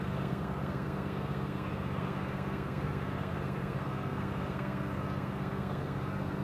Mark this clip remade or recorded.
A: remade